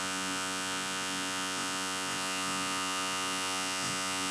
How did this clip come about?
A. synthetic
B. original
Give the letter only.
A